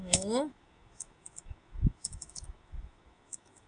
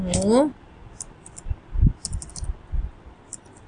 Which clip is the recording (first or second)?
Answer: second